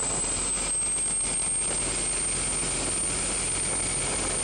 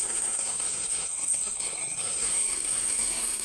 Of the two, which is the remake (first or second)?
second